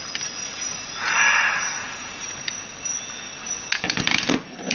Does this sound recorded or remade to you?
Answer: recorded